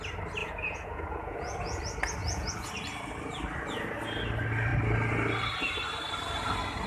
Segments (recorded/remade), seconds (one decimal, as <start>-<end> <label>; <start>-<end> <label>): 0.0-0.4 recorded; 0.4-1.8 remade; 1.8-2.2 recorded; 2.2-2.7 remade; 2.7-6.9 recorded

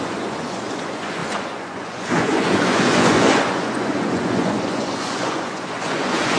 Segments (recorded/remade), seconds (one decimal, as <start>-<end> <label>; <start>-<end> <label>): 0.0-6.4 remade

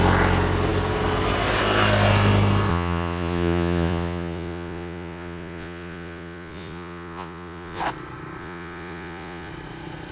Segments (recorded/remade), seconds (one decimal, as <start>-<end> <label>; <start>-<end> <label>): 0.0-2.7 recorded; 2.7-7.8 remade; 7.8-8.4 recorded; 8.4-9.5 remade; 9.5-10.1 recorded